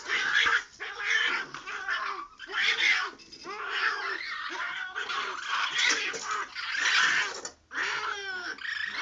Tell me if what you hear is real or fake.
real